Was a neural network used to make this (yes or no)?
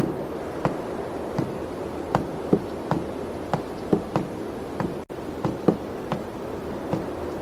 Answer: no